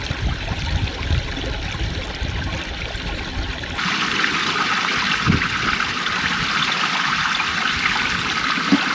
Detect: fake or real fake